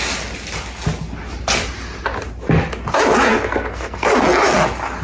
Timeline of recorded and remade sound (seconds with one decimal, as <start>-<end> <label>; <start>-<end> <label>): 0.0-3.3 recorded; 3.3-4.1 remade; 4.1-5.0 recorded